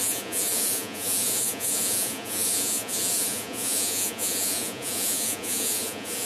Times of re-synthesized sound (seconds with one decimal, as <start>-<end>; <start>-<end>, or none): 0.0-6.3